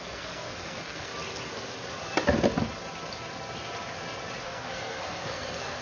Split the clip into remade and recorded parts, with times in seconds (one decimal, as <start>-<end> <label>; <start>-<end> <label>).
0.0-1.1 remade; 1.1-4.4 recorded; 4.4-5.8 remade